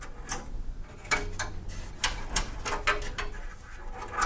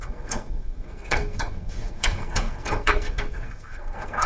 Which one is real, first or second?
first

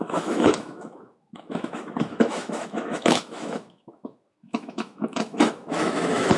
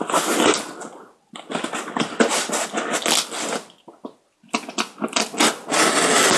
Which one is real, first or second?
second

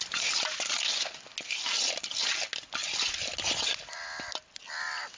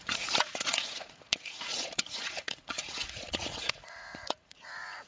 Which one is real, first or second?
first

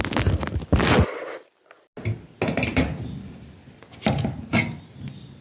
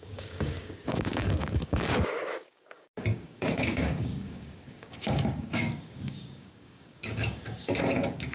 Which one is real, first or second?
first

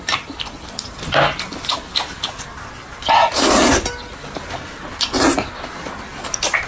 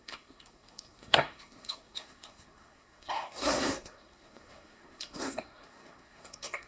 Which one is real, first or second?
first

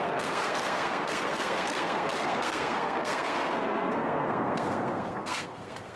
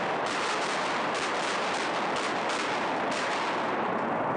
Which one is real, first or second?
second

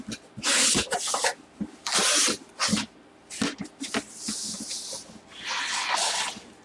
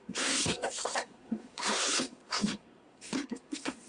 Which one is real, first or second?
first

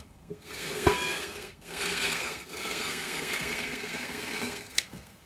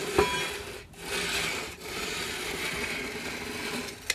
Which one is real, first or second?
second